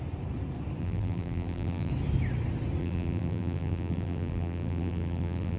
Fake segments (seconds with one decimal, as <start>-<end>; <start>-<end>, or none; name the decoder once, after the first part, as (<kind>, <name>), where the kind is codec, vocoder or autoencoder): 0.8-1.9 (vocoder, BigVGAN v2); 2.8-5.6